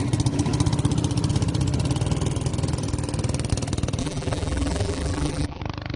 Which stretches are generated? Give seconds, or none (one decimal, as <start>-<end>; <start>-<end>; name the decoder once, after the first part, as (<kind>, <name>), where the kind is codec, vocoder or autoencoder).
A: 4.0-5.6 (vocoder, BigVGAN v2)